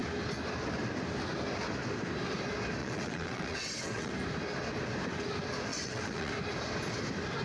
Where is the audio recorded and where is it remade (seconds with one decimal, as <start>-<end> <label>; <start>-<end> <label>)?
0.0-2.8 recorded; 2.8-4.1 remade; 4.1-5.7 recorded; 5.7-6.3 remade; 6.3-7.4 recorded